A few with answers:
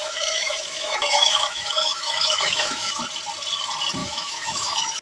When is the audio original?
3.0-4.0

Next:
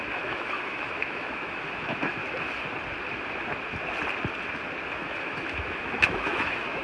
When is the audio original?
2.2-4.9

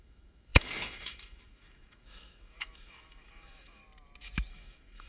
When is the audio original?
3.8-4.5

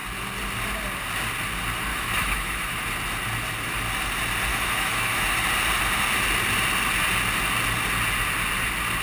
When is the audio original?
0.0-1.9; 2.8-4.5; 5.2-9.0

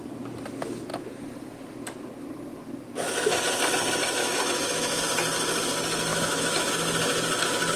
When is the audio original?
0.0-4.2; 5.0-6.1; 6.7-7.8

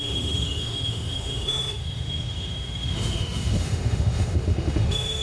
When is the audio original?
none

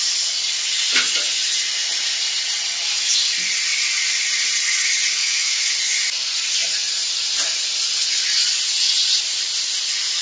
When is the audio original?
0.0-5.2; 5.7-10.2

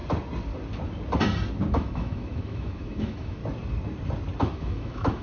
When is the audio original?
0.0-1.7; 3.4-4.4